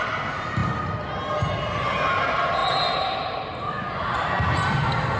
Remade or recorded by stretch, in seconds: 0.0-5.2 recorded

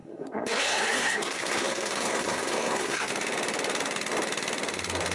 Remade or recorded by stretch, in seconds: 0.0-3.1 remade; 3.1-5.1 recorded

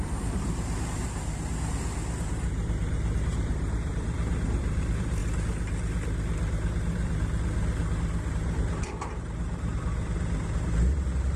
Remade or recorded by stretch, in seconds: 0.0-5.2 remade; 5.2-8.3 recorded; 8.3-11.4 remade

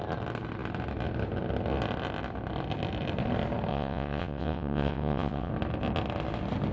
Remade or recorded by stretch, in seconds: 0.0-3.7 recorded; 3.7-5.5 remade; 5.5-6.7 recorded

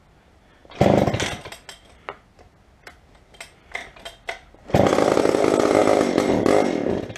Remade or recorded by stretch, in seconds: 0.0-7.2 recorded

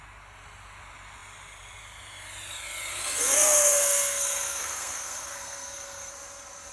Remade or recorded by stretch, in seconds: 0.0-2.9 recorded; 2.9-6.1 remade; 6.1-6.7 recorded